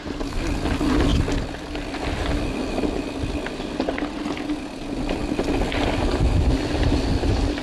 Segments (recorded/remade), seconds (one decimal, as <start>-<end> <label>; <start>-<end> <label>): 0.0-7.6 recorded